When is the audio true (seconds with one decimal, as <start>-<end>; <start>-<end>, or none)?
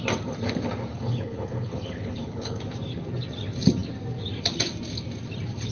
0.0-0.9; 2.6-5.7